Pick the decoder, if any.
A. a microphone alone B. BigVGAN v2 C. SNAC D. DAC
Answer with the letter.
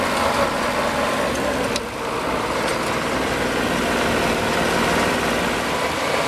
B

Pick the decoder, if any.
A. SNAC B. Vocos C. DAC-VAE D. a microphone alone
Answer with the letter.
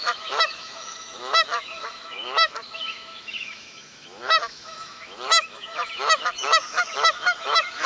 C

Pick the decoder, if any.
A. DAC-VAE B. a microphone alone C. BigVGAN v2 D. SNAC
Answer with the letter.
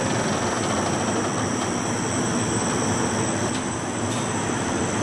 B